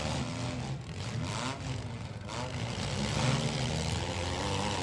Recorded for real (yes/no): yes